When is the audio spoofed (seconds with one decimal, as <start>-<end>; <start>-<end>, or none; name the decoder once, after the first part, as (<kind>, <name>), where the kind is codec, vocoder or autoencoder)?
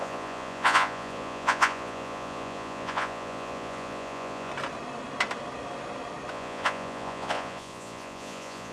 0.0-4.5 (vocoder, Vocos); 6.3-8.7